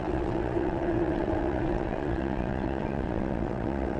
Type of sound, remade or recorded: remade